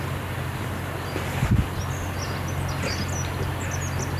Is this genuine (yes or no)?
yes